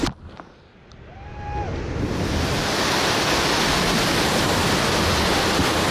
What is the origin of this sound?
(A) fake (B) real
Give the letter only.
B